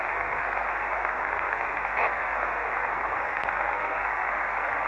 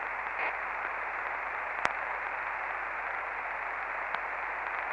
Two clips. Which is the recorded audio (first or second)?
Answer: second